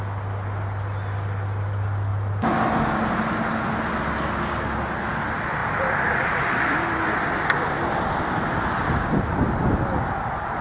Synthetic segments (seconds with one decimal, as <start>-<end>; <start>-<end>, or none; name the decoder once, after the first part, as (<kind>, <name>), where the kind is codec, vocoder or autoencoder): none